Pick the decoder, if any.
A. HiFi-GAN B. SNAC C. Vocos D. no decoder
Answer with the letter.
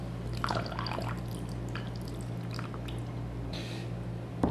D